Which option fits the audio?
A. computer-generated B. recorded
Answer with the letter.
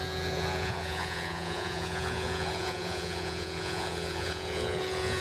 A